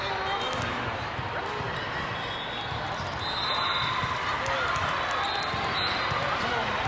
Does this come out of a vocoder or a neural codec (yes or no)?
no